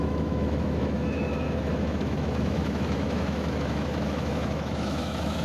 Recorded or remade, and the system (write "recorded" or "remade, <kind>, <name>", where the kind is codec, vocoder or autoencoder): remade, autoencoder, DAC-VAE